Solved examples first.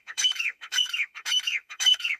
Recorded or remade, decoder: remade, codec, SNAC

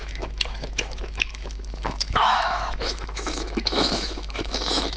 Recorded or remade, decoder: remade, autoencoder, DAC-VAE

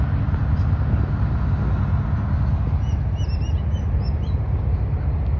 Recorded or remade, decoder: recorded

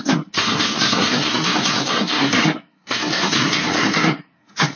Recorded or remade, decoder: remade, codec, SNAC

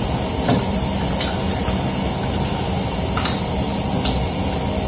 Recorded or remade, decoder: recorded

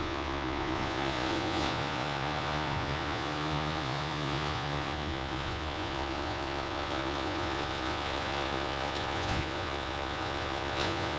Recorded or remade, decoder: remade, vocoder, Vocos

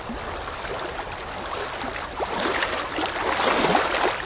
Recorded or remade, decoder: recorded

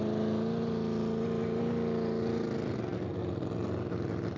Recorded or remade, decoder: recorded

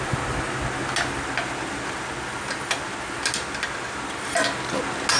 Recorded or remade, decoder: recorded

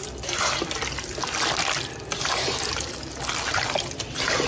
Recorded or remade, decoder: recorded